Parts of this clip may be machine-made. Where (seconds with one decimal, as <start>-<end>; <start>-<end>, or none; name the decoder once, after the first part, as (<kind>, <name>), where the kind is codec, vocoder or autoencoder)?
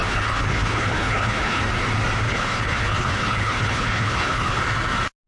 0.0-1.6 (codec, HILCodec); 2.3-4.6